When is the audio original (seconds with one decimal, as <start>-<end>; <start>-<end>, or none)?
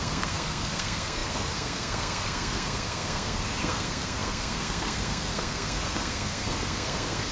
none